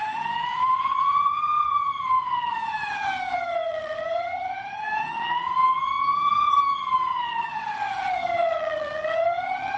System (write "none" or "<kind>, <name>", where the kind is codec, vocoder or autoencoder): vocoder, HiFi-GAN